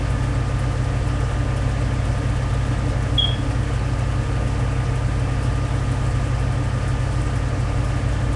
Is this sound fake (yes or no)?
no